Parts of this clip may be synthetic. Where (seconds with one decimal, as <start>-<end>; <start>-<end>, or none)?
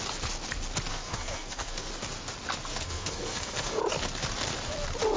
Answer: 0.9-1.9; 2.7-3.8